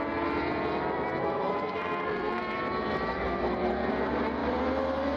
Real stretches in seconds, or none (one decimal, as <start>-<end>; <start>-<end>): 0.0-1.1; 2.4-3.1; 3.9-5.2